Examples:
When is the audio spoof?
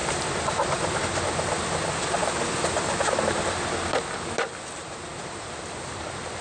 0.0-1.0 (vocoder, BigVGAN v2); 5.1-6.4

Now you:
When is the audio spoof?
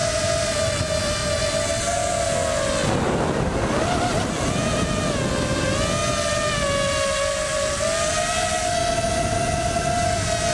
0.0-0.6 (vocoder, BigVGAN v2)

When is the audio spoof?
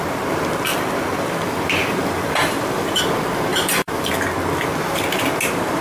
0.7-3.0 (vocoder, BigVGAN v2); 3.5-4.1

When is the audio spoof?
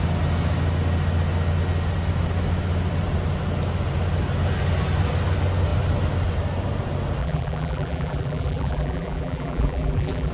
7.2-10.3 (vocoder, BigVGAN v2)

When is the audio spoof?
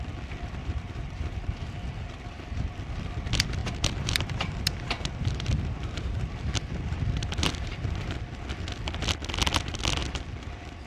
0.6-1.6 (vocoder, BigVGAN v2); 3.6-8.2